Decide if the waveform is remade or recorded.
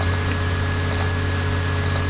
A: recorded